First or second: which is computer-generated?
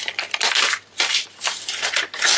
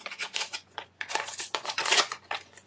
second